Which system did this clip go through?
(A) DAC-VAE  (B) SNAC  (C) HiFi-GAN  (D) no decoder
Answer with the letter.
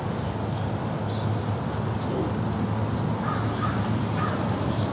D